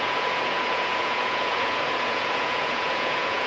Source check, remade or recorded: remade